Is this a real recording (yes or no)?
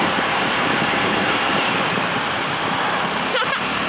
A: no